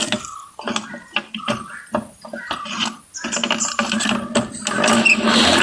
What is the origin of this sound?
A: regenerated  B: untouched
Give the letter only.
B